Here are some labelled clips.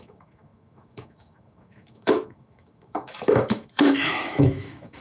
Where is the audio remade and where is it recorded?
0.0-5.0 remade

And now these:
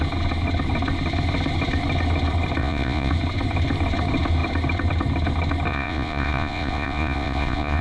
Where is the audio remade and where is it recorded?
0.0-2.6 recorded; 2.6-3.1 remade; 3.1-5.7 recorded; 5.7-7.8 remade

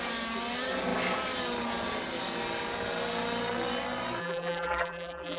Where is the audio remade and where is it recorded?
0.0-4.2 recorded; 4.2-5.4 remade

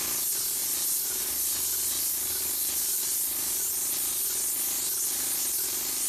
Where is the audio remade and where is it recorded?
0.0-6.1 recorded

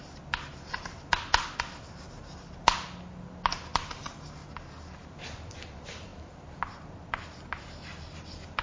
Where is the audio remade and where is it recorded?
0.0-8.6 recorded

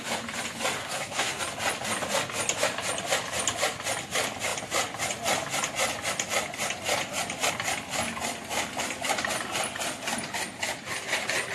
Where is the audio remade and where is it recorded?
0.0-0.8 recorded; 0.8-1.4 remade; 1.4-11.5 recorded